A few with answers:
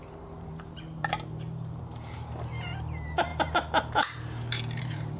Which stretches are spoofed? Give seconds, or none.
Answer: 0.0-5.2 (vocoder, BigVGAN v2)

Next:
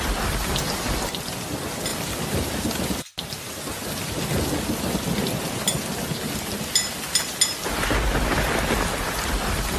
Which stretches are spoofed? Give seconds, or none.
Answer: 1.9-2.5 (vocoder, BigVGAN v2)

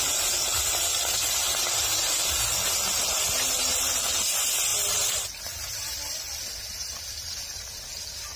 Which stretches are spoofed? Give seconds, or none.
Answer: 4.7-7.1 (vocoder, BigVGAN v2)

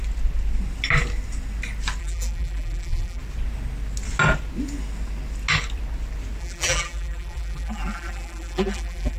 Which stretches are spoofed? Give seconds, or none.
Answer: 2.0-3.2 (vocoder, BigVGAN v2); 6.4-9.2

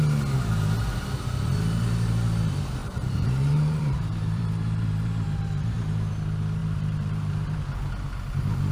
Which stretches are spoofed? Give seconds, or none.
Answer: 2.8-6.1 (vocoder, BigVGAN v2); 6.6-7.6

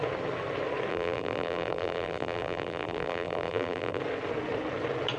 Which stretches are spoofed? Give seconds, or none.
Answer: 0.9-4.0 (vocoder, BigVGAN v2)

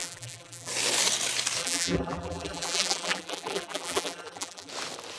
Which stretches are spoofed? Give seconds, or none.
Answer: 0.0-0.7 (vocoder, BigVGAN v2); 1.6-4.7

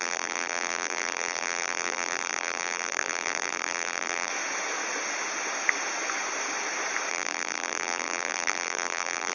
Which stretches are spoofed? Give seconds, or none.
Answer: 0.0-4.3 (vocoder, BigVGAN v2); 7.1-9.3